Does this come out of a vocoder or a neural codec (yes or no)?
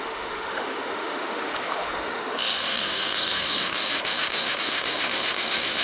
yes